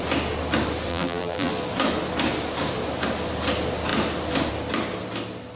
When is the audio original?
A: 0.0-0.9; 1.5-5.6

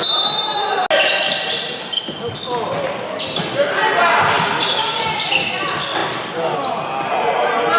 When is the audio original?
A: 0.0-7.8

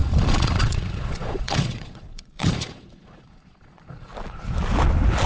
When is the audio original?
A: 4.1-5.3

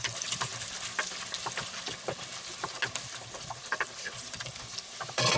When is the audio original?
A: 0.5-3.7

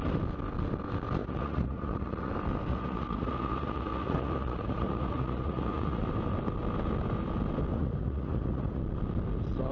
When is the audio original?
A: 0.0-1.2; 2.3-2.7; 6.0-7.7; 8.8-9.7

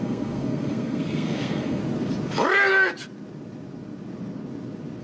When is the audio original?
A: 1.8-5.0